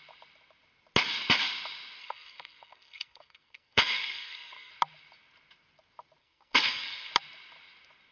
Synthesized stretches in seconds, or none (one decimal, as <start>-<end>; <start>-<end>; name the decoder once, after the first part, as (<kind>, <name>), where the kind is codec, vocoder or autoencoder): 2.0-4.7 (codec, SNAC); 6.2-7.1